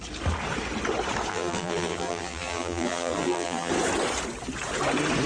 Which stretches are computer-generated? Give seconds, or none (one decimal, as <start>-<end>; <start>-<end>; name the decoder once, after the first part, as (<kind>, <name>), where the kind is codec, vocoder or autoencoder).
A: 1.3-3.7 (vocoder, BigVGAN v2)